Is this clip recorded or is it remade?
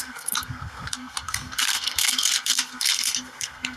remade